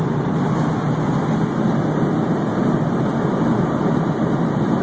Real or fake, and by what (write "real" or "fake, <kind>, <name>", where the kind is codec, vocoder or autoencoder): real